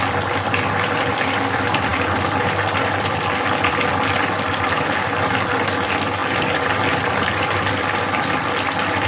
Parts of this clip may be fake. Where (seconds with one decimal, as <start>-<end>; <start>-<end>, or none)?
none